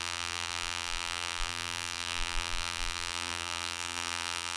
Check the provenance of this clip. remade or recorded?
remade